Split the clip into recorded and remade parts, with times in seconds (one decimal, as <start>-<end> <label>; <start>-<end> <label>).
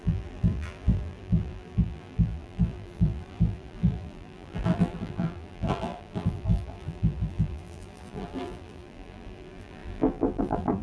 0.0-10.8 remade